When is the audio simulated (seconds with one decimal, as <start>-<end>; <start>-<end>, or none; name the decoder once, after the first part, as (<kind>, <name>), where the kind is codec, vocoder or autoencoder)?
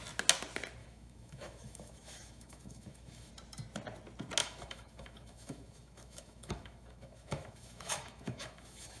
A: 0.8-3.3 (autoencoder, DAC-VAE); 4.4-9.0